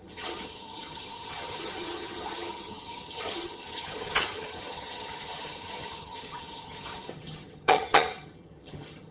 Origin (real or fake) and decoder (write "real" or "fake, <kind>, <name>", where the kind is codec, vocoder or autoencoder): fake, vocoder, HiFi-GAN